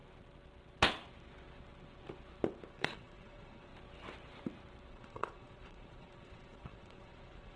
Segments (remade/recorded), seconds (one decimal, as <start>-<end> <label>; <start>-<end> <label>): 0.0-2.7 recorded; 2.7-3.7 remade; 3.7-4.9 recorded; 4.9-7.6 remade